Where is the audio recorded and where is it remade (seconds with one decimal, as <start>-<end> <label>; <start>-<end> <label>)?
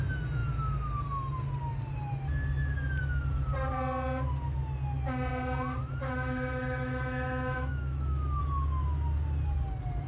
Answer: 0.0-5.8 recorded; 5.8-8.4 remade; 8.4-10.1 recorded